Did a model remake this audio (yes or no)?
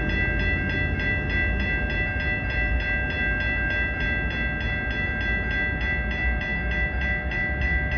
no